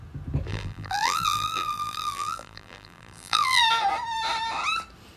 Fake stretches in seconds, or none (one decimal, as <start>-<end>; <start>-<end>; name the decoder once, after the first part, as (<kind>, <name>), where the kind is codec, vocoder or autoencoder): 0.5-3.6 (vocoder, BigVGAN v2)

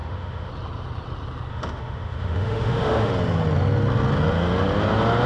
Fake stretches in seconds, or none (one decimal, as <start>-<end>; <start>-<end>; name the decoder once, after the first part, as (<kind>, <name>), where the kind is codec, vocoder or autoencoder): 0.0-0.5 (autoencoder, DAC-VAE); 1.5-3.1

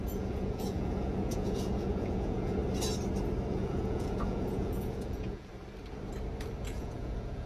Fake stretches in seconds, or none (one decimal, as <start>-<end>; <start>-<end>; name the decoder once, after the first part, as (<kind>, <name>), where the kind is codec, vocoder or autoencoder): 0.0-2.6 (vocoder, Vocos); 3.5-5.5; 6.6-7.5